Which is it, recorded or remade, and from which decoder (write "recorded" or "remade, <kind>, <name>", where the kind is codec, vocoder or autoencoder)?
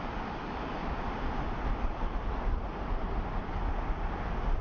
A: recorded